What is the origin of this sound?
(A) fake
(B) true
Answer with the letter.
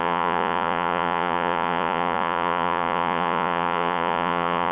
A